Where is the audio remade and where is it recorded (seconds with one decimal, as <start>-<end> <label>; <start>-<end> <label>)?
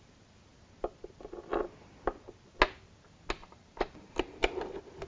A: 0.0-3.4 recorded; 3.4-4.6 remade; 4.6-5.1 recorded